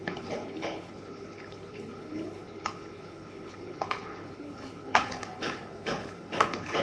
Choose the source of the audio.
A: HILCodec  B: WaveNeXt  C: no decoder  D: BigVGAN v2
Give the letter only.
A